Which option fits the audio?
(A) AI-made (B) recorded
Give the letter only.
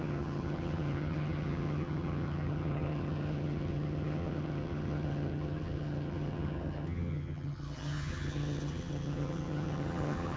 A